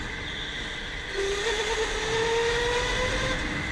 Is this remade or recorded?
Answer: recorded